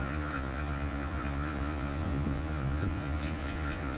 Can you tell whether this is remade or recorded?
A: remade